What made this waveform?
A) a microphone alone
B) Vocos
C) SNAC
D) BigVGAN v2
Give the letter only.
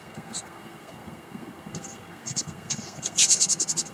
C